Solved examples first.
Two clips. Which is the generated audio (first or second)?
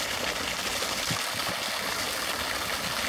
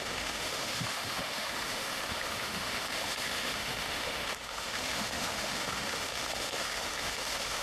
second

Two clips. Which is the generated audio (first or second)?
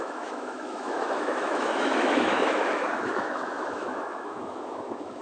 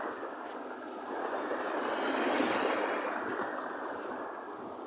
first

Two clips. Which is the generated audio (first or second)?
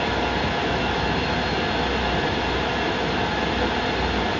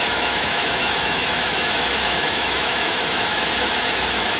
second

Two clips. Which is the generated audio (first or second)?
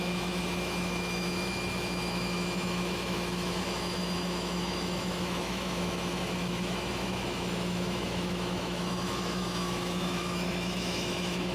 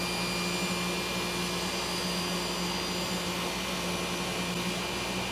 first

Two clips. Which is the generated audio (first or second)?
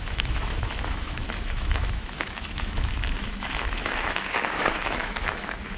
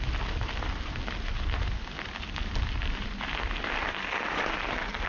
first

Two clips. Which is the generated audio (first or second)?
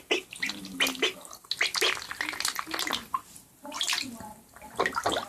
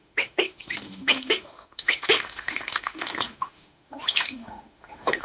second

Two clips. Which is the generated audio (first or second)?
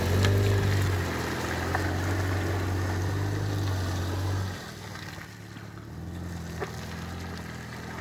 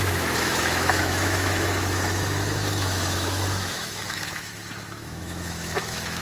second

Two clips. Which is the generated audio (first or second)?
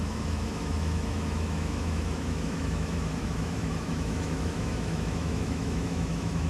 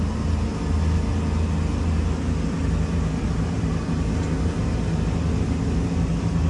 first